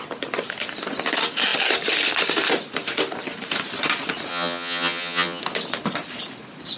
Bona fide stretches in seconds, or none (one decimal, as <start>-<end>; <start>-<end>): 0.0-4.3; 5.4-6.8